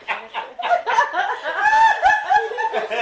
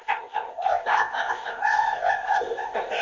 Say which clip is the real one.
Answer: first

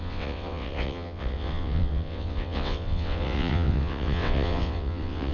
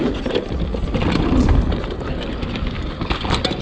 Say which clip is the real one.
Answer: second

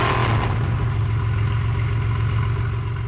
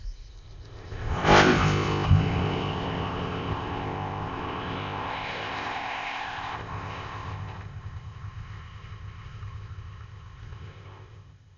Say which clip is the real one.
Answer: first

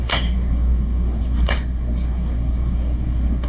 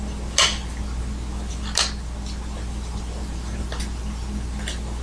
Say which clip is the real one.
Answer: second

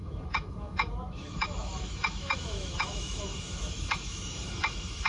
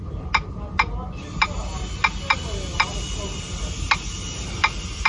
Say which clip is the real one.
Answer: second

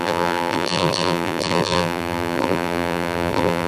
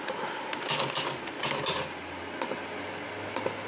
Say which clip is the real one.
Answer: second